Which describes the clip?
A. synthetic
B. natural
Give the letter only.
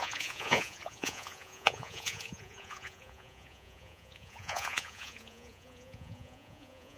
A